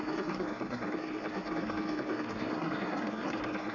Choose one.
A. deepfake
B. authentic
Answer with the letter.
A